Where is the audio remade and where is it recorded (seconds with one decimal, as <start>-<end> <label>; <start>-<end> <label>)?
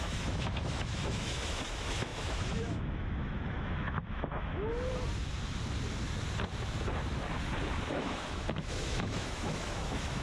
0.0-4.7 remade; 4.7-7.9 recorded; 7.9-10.2 remade